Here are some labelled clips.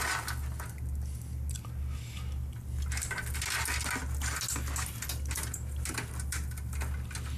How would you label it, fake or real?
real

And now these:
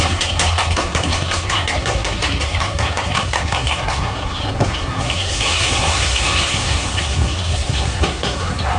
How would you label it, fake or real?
fake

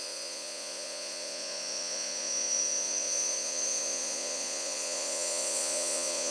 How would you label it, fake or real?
fake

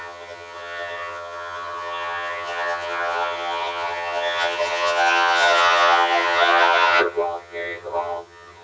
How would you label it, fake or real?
fake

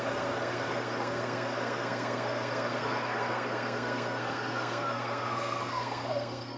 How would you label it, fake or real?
fake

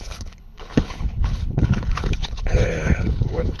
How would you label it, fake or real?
fake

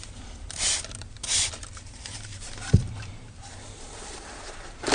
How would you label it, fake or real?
fake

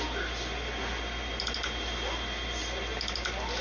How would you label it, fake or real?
real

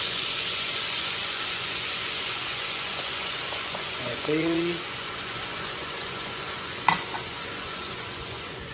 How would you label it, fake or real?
fake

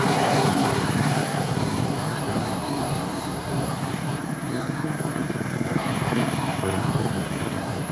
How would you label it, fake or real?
fake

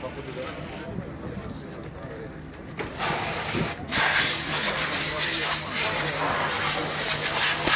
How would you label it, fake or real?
real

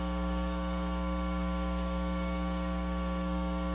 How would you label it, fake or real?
fake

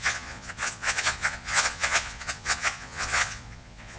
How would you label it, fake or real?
fake